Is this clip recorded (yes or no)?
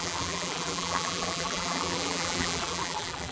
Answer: no